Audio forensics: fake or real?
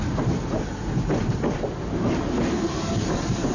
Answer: real